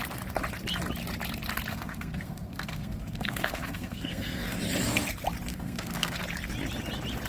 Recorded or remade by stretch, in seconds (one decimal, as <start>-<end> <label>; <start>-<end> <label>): 0.0-1.7 recorded; 1.7-4.6 remade; 4.6-5.5 recorded; 5.5-6.2 remade; 6.2-7.3 recorded